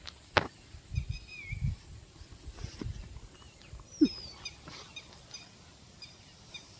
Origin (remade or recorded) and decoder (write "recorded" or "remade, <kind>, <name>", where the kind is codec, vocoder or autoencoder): recorded